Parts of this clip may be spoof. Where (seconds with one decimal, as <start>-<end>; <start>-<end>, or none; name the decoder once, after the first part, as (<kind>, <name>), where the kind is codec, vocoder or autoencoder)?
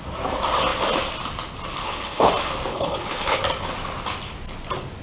1.8-2.3 (codec, HILCodec); 2.7-3.4